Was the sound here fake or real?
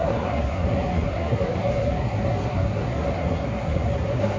fake